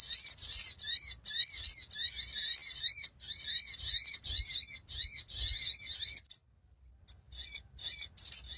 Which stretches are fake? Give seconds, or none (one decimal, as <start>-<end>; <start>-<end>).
none